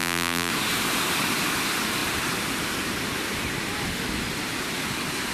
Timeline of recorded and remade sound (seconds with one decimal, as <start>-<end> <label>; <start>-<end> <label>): 0.0-0.5 remade; 0.5-5.3 recorded